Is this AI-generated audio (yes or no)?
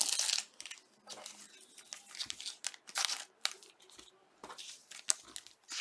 no